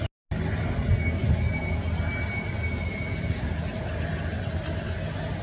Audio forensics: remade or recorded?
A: recorded